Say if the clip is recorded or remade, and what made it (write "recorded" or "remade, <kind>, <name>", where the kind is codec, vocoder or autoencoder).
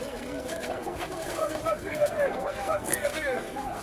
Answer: remade, codec, SNAC